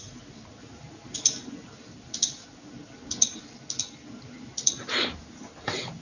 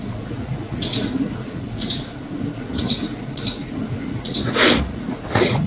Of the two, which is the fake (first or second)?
second